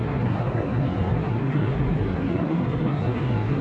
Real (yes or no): no